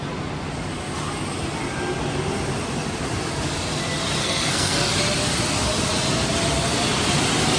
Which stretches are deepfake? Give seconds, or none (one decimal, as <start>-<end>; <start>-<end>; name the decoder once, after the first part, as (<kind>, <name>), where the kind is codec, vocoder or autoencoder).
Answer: 4.2-4.9 (codec, SNAC)